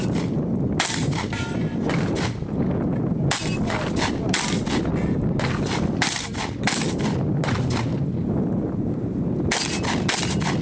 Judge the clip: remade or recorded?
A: recorded